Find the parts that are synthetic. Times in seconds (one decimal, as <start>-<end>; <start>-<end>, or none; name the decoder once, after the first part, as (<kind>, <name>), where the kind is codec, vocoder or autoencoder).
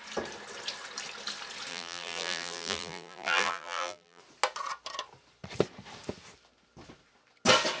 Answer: 1.7-4.2 (vocoder, BigVGAN v2)